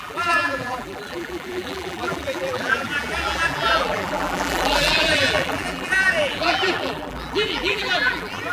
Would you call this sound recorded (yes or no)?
no